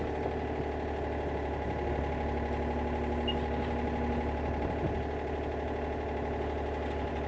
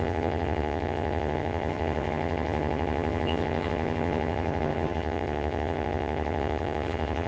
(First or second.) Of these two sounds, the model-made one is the second